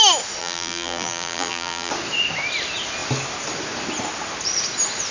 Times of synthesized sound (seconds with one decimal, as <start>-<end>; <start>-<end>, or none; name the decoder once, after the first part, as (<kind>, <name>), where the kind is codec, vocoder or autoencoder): 0.4-1.9 (vocoder, BigVGAN v2)